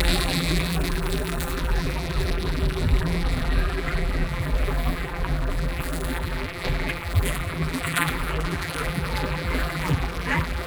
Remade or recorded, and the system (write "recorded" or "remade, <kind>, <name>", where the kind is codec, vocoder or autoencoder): remade, vocoder, BigVGAN v2